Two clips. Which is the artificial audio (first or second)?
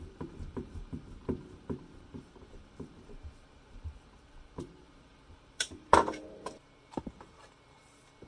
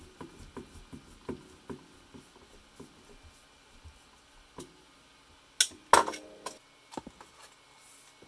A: first